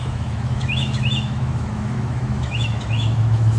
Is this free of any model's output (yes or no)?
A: no